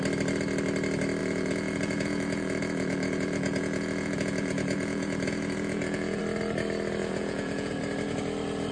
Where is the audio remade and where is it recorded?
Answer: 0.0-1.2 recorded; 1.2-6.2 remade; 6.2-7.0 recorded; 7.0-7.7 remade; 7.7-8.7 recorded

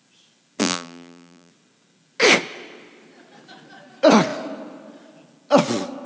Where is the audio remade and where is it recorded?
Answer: 0.0-0.6 recorded; 0.6-1.5 remade; 1.5-6.1 recorded

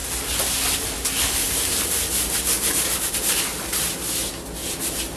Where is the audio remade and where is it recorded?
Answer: 0.0-5.2 recorded

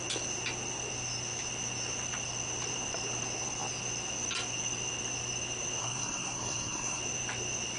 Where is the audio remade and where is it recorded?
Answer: 0.0-5.8 recorded; 5.8-7.0 remade; 7.0-7.8 recorded